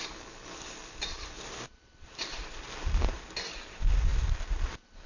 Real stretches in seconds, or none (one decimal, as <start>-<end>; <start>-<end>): 0.0-0.8; 3.2-4.1